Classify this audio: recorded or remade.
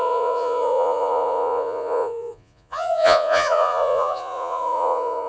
remade